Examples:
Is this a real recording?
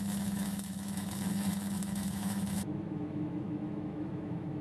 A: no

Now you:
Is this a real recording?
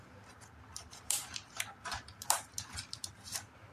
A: no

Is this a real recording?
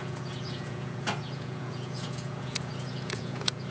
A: no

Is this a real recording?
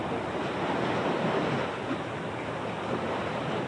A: yes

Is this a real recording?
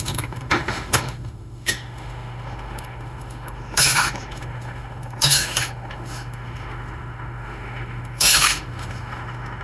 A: no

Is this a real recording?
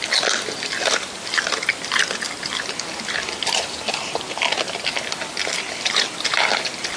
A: yes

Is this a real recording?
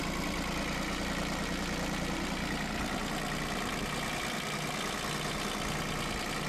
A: yes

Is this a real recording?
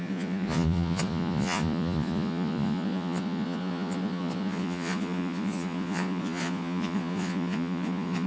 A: no